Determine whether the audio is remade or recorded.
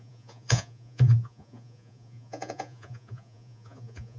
remade